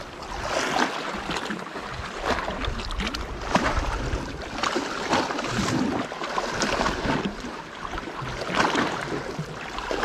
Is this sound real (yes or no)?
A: yes